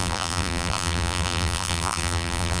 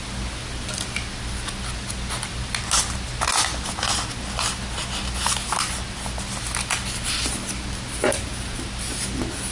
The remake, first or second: first